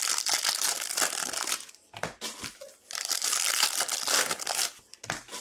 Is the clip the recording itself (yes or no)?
yes